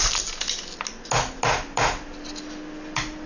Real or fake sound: real